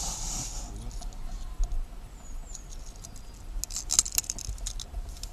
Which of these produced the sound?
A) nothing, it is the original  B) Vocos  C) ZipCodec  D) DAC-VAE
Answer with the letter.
A